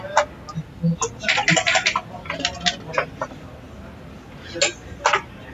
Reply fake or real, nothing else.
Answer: real